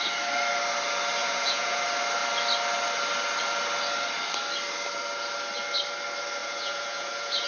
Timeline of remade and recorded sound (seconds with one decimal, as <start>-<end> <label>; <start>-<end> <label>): 0.0-1.2 recorded; 1.2-1.8 remade; 1.8-6.4 recorded; 6.4-7.5 remade